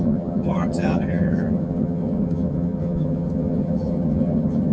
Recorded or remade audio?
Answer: remade